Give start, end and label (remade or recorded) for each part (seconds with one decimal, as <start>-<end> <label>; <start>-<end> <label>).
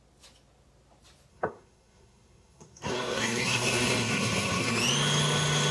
0.0-1.3 recorded; 1.3-4.7 remade; 4.7-5.7 recorded